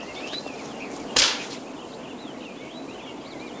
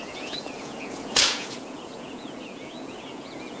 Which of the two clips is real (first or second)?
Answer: first